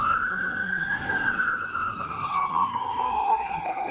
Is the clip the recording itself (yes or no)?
no